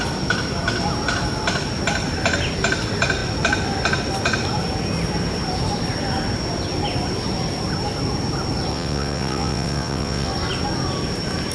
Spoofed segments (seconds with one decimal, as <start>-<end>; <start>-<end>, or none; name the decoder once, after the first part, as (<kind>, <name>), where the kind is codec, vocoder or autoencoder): 8.7-10.3 (vocoder, WaveNeXt)